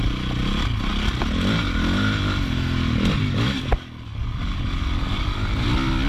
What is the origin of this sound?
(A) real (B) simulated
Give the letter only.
A